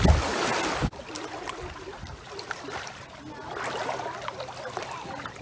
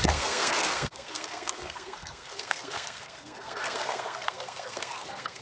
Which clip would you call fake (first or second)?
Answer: second